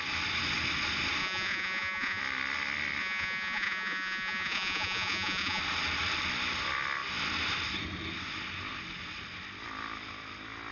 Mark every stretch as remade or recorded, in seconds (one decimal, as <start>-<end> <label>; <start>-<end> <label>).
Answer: 0.0-1.2 recorded; 1.2-2.2 remade; 2.2-3.0 recorded; 3.0-5.6 remade; 5.6-10.7 recorded